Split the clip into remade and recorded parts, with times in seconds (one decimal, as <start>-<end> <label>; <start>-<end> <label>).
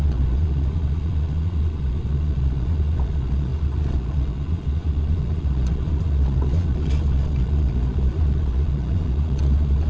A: 0.0-9.9 remade